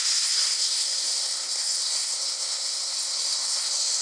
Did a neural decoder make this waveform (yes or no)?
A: yes